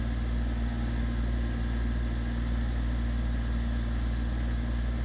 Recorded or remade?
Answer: recorded